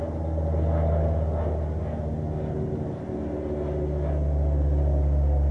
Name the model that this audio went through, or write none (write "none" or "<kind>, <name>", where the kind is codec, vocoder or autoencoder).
none